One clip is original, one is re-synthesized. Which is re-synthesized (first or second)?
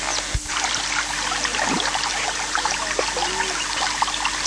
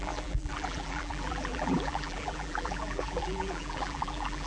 second